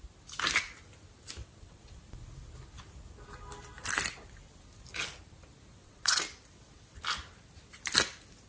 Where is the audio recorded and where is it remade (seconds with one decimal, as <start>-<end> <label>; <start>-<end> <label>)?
0.0-1.4 recorded; 1.4-2.0 remade; 2.0-5.7 recorded; 5.7-6.2 remade; 6.2-8.5 recorded